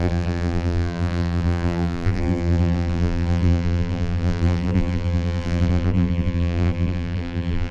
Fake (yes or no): yes